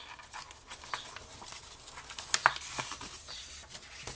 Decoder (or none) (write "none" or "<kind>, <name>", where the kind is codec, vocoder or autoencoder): none